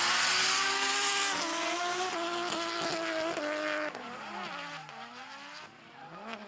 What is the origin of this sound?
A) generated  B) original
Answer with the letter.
B